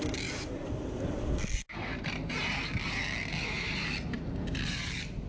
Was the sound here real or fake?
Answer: real